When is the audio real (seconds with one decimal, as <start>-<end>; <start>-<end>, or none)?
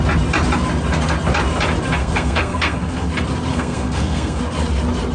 0.0-2.0; 3.1-3.5; 4.4-5.1